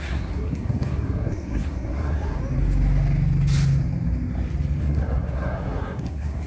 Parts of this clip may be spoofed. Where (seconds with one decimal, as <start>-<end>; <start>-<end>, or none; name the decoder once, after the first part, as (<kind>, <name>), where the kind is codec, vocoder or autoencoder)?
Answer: 0.0-2.4 (codec, SNAC); 4.8-6.5

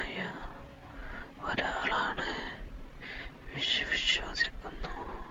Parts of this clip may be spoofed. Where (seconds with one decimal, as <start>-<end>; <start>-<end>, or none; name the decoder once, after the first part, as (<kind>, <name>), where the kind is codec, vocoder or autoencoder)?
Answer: 1.0-3.6 (vocoder, BigVGAN v2); 4.1-5.3